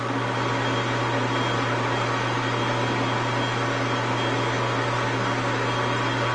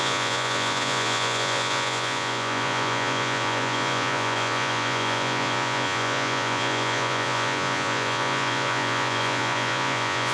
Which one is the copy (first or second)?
second